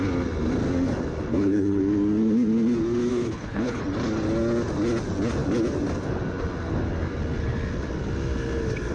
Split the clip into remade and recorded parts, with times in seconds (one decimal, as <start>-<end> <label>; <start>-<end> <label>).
0.0-1.3 recorded; 1.3-1.8 remade; 1.8-3.1 recorded; 3.1-3.8 remade; 3.8-8.9 recorded